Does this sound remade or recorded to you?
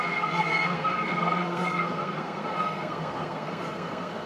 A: remade